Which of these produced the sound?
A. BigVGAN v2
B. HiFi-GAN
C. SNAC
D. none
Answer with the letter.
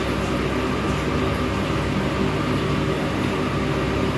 D